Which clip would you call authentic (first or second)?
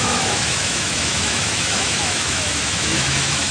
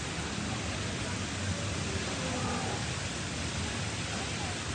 second